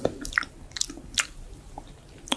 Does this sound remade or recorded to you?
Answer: recorded